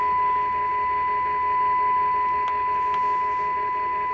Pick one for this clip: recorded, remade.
recorded